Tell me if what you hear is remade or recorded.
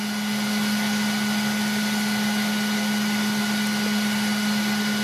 recorded